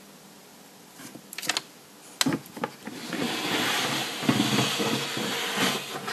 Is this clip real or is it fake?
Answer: real